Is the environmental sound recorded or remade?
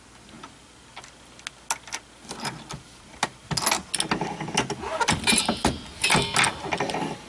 recorded